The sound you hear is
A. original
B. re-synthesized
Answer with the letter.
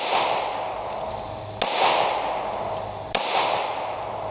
A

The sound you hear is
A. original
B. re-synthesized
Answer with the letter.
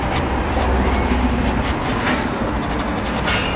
A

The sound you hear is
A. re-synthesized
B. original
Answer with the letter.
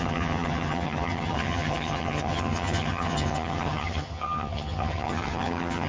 A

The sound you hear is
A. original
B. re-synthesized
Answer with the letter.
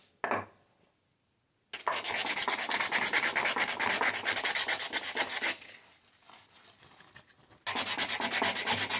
A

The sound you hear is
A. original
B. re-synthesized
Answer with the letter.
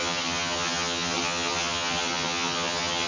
B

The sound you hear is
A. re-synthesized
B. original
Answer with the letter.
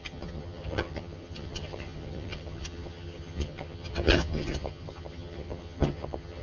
A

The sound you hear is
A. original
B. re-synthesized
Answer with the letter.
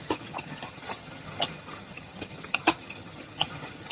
B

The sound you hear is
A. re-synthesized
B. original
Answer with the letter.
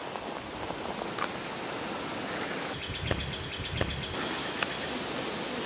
B